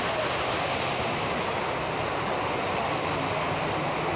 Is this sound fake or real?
real